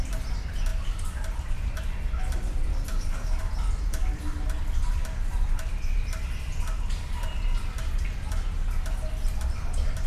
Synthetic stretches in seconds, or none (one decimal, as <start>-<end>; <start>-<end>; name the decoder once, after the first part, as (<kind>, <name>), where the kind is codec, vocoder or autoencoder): 2.7-3.4 (codec, DAC)